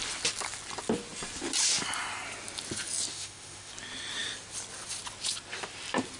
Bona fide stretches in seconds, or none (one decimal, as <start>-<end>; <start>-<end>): 0.0-3.1; 3.7-6.2